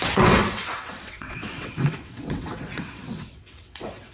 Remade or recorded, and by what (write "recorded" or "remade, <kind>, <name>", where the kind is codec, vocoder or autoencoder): remade, vocoder, WaveNeXt